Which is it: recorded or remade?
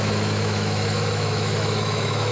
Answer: remade